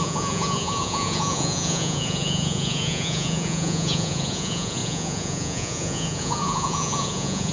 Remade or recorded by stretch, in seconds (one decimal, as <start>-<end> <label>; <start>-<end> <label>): 0.0-7.5 remade